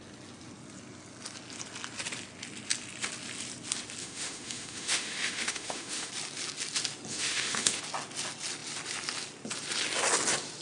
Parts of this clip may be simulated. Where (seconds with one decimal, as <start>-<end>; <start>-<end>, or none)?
4.0-6.1; 7.1-7.8